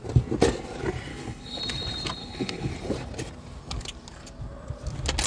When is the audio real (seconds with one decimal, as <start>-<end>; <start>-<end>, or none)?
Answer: 0.0-1.1; 1.6-2.2; 2.7-5.3